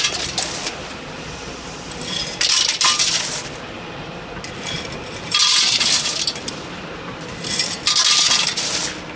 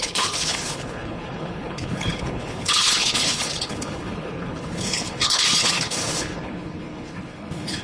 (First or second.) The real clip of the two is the first